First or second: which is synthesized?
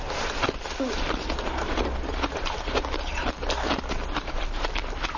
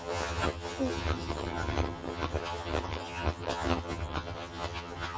second